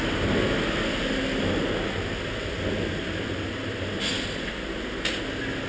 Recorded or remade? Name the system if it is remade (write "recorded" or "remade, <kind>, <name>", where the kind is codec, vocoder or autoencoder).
recorded